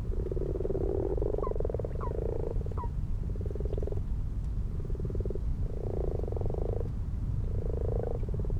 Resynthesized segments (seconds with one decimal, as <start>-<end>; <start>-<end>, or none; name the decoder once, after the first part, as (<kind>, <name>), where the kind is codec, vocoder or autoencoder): none